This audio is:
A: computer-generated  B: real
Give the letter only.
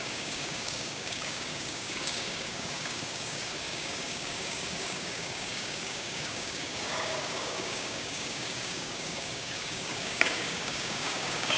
A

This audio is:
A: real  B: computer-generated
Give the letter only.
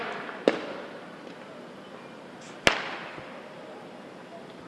A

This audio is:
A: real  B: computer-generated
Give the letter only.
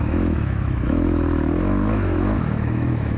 B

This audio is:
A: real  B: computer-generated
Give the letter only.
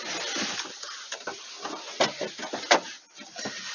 A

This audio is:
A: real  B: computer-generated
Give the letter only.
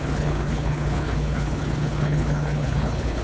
B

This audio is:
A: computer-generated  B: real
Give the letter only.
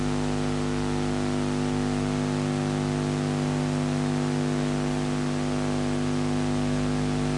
B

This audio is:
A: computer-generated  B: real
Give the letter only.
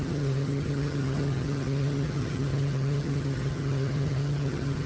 A